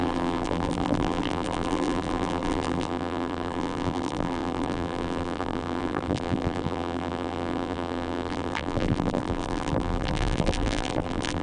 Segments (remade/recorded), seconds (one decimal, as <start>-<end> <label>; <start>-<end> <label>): 0.0-11.4 remade